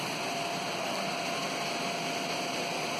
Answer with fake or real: real